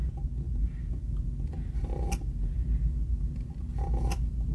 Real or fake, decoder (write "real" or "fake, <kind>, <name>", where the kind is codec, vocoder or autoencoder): real